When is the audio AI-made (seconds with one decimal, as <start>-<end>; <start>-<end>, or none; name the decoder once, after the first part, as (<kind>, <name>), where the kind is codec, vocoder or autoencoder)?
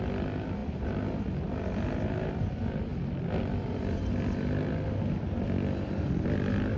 none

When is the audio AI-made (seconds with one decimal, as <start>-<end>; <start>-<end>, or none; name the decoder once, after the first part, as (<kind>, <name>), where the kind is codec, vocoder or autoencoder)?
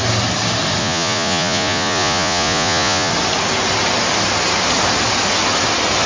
0.8-3.1 (vocoder, Vocos)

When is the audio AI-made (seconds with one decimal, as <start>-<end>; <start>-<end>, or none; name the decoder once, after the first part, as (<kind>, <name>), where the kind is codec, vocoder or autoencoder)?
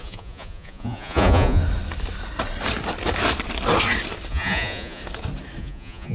0.0-1.6 (vocoder, Vocos); 4.3-5.0; 5.6-6.1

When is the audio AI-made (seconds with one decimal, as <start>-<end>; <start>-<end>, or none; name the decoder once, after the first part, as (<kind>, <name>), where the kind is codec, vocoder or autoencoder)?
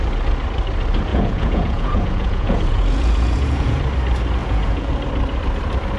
1.1-3.8 (vocoder, Vocos); 4.4-4.9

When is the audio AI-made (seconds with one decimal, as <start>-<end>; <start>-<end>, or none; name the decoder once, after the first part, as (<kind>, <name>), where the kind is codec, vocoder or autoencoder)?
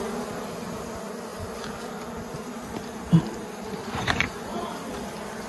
3.8-4.7 (vocoder, Vocos)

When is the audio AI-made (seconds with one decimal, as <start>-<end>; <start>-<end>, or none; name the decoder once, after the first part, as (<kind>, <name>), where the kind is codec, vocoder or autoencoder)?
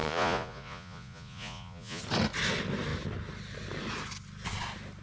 0.0-2.0 (vocoder, Vocos)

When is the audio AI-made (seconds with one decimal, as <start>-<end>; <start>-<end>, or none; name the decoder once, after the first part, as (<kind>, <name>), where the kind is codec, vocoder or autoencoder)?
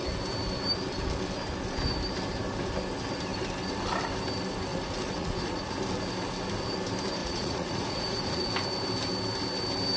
4.7-5.7 (vocoder, Vocos); 7.2-8.5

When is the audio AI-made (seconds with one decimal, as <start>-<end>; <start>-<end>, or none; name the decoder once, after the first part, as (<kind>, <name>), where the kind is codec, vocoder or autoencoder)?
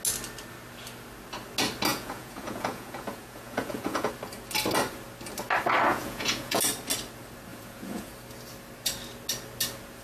1.9-4.1 (vocoder, Vocos); 5.9-6.6; 7.5-8.1